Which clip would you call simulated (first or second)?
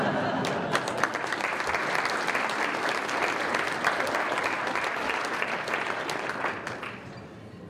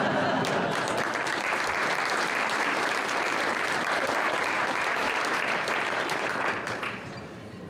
second